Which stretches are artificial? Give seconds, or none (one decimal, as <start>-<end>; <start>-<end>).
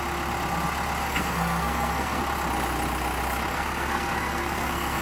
1.0-2.2; 3.5-5.0